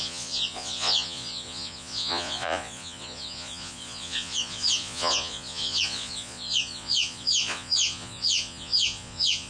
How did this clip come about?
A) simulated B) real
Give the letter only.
A